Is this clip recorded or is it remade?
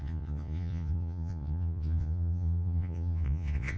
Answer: remade